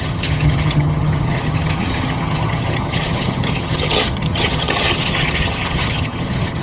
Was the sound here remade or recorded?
remade